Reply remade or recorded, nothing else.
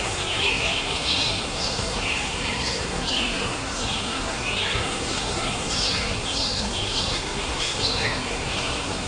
remade